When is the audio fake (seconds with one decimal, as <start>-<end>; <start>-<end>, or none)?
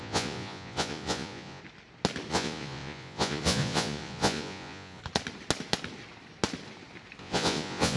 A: 0.0-1.6; 2.3-5.0; 7.2-8.0